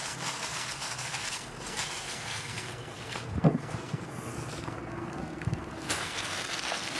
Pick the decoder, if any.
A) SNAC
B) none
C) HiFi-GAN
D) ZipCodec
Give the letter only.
A